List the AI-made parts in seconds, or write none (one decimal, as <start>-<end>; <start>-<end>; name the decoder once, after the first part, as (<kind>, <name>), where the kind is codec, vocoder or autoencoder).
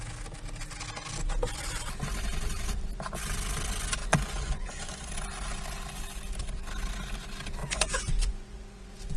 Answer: 4.0-5.1 (vocoder, Vocos); 7.6-9.2